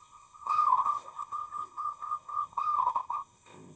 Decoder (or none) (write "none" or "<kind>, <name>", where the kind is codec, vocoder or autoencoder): codec, ZipCodec